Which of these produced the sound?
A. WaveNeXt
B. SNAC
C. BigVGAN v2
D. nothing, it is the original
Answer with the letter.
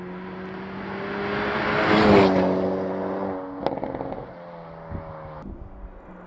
D